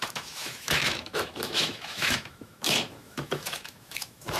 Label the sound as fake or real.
fake